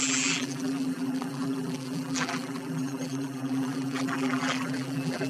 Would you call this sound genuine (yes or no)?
no